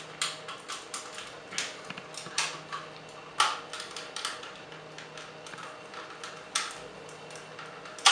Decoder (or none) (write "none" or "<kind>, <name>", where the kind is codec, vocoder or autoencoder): none